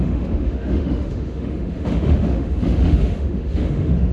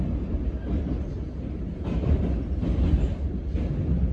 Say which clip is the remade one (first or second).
first